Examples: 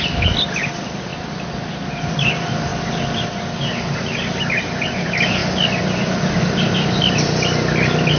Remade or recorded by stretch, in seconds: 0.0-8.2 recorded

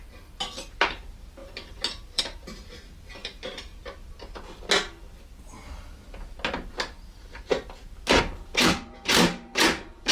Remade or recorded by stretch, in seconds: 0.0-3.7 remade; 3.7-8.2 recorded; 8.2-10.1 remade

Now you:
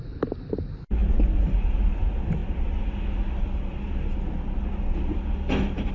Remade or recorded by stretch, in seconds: 0.0-5.9 recorded